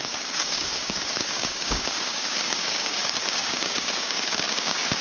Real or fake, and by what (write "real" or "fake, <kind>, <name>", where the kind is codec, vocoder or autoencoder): fake, codec, DAC